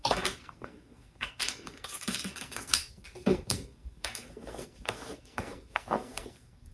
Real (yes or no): no